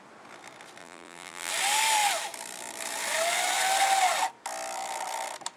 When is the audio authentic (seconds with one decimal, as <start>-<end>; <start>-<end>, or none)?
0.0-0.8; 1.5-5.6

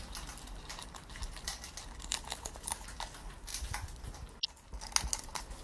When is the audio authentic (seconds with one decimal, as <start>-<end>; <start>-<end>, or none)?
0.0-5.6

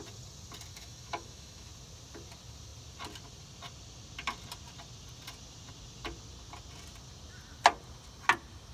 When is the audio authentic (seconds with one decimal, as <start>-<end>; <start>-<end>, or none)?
0.0-0.7; 1.7-8.7

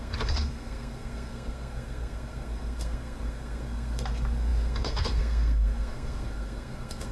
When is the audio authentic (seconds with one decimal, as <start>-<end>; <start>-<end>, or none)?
none

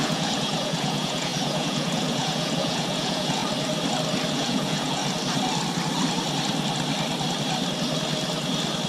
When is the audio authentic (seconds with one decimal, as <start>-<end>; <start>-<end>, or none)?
3.4-4.3; 5.0-8.9

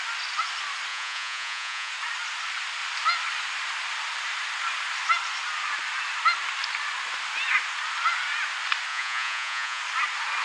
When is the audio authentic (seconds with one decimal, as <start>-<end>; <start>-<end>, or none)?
0.0-0.9; 1.9-8.9; 9.8-10.4